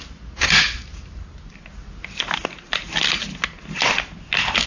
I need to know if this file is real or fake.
real